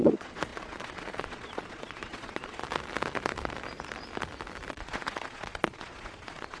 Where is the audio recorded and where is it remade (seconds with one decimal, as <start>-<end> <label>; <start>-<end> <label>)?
0.0-2.6 remade; 2.6-4.7 recorded; 4.7-6.6 remade